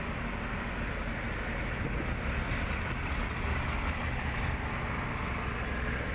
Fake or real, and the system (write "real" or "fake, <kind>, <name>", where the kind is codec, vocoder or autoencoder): real